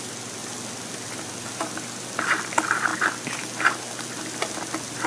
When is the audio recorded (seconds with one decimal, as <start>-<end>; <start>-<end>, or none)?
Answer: 0.0-5.1